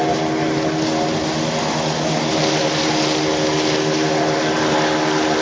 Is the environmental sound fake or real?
real